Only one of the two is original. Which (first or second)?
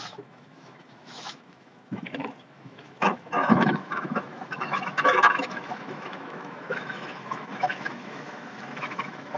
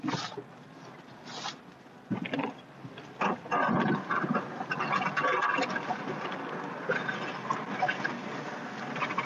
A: second